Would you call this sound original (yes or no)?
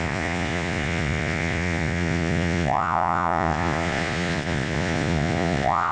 no